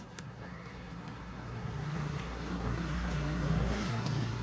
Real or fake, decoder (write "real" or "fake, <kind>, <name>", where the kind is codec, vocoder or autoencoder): fake, codec, SNAC